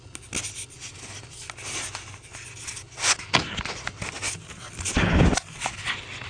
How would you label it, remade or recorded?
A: recorded